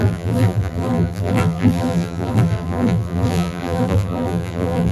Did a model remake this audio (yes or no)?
yes